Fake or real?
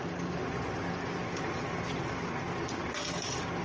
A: real